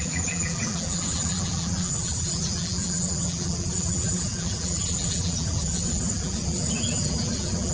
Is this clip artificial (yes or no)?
yes